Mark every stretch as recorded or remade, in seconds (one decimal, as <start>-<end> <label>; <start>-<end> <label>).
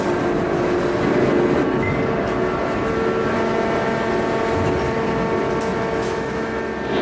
0.0-6.0 recorded; 6.0-6.6 remade; 6.6-7.0 recorded